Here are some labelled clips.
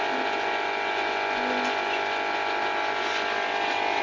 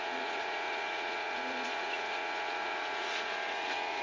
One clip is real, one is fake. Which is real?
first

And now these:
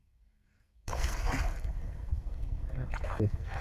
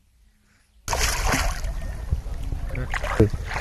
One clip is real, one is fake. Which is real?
second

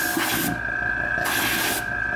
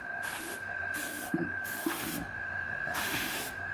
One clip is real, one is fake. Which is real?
first